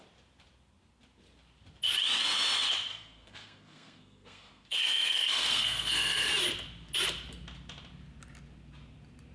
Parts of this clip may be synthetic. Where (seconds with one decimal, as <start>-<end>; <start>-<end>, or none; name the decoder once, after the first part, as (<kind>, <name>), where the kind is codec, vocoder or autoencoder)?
2.9-6.3 (codec, SNAC)